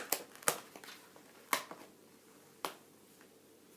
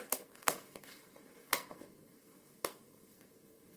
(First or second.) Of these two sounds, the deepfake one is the second